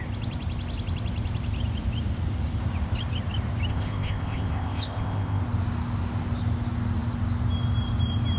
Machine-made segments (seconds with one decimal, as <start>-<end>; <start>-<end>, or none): 3.7-5.4